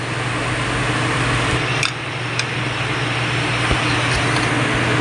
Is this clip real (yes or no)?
yes